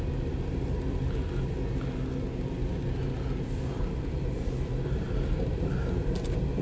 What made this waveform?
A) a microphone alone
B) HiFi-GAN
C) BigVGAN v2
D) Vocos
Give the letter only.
A